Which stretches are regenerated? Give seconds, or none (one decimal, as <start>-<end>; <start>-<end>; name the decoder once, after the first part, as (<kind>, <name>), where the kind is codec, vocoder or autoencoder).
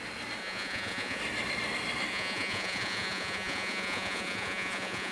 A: 0.4-1.2 (vocoder, Vocos); 2.1-5.1